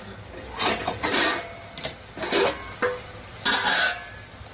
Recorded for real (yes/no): yes